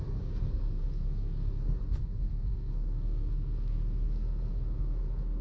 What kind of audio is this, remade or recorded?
remade